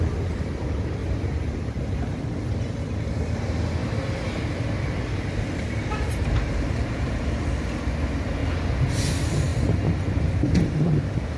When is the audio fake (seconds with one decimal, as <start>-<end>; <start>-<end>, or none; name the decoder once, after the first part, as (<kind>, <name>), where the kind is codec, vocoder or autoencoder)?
1.0-2.0 (vocoder, BigVGAN v2); 3.8-7.2